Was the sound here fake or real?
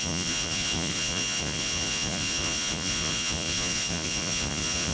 fake